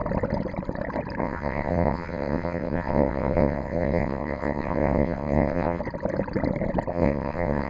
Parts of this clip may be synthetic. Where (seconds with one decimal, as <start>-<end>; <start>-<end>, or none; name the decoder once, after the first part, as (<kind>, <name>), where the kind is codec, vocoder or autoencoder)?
1.2-5.8 (vocoder, WaveNeXt); 6.9-7.7